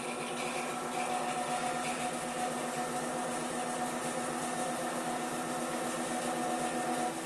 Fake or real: real